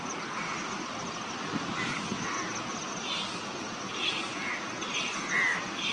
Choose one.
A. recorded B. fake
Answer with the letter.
A